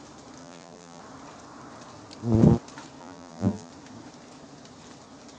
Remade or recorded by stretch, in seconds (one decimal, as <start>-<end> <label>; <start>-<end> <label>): 0.0-0.4 recorded; 0.4-1.0 remade; 1.0-3.0 recorded; 3.0-3.7 remade; 3.7-5.4 recorded